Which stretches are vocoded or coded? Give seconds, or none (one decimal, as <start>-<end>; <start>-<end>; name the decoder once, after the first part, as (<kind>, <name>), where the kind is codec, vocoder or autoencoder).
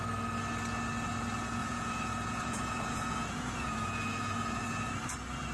1.6-4.9 (vocoder, Vocos)